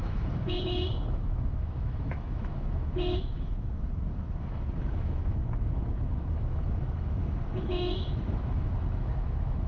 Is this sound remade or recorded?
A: remade